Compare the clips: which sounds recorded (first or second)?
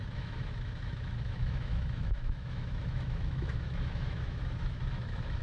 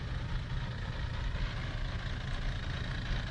second